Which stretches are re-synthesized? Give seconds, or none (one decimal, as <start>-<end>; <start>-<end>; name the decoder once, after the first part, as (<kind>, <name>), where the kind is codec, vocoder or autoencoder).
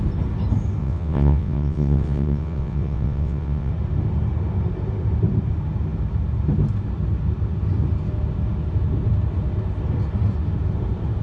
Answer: 0.8-3.7 (vocoder, WaveNeXt)